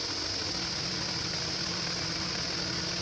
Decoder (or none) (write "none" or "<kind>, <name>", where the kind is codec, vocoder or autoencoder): none